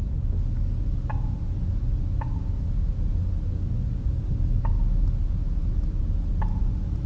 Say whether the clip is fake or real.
real